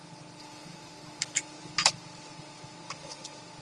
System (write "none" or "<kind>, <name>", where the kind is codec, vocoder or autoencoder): none